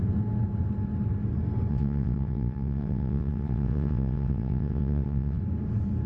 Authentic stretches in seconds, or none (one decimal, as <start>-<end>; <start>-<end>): 0.0-1.7; 5.4-6.1